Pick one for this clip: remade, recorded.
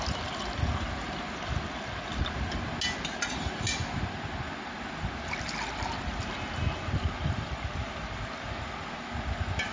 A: recorded